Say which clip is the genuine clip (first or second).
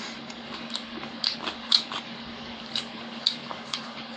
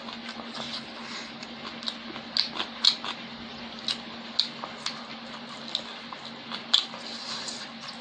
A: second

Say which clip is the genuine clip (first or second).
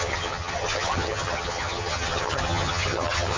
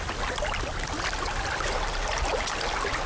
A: second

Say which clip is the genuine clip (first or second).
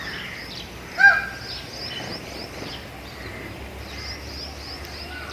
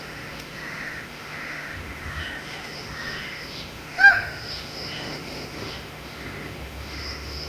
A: first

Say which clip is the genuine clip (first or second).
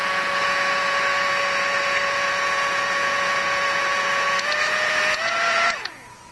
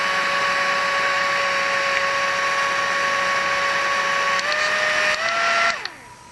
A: second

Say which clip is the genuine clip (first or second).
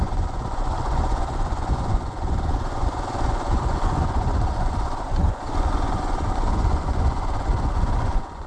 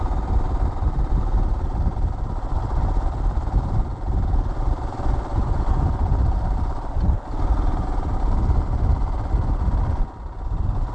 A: second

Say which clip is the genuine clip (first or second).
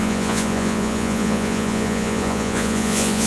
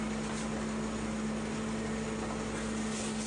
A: second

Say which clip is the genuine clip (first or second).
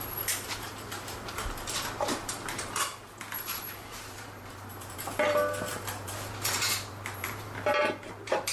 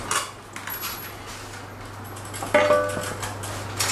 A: second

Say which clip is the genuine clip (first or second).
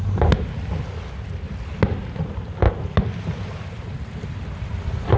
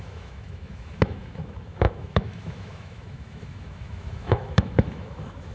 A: first